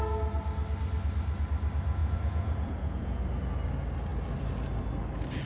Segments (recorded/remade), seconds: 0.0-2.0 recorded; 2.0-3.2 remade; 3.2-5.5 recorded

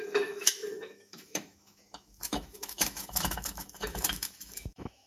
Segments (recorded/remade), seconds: 0.0-5.1 remade